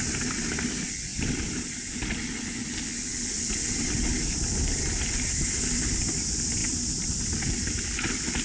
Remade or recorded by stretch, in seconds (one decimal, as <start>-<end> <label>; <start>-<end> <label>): 0.0-1.1 recorded; 1.1-2.0 remade; 2.0-8.4 recorded